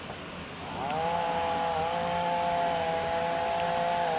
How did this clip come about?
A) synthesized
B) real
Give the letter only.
B